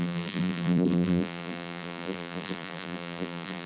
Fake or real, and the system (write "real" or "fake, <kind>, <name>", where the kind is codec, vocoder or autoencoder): fake, vocoder, BigVGAN v2